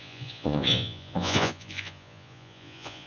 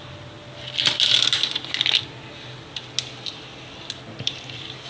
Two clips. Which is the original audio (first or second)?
second